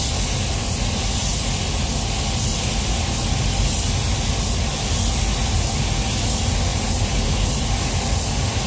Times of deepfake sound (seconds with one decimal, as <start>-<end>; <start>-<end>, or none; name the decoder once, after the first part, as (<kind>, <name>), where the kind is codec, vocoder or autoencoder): none